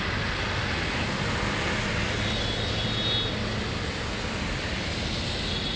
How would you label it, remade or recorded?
recorded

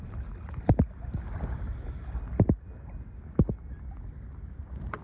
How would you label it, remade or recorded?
recorded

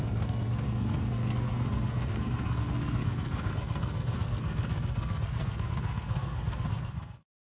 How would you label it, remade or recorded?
remade